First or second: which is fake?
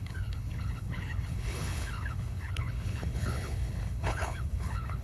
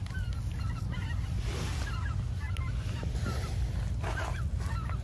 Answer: first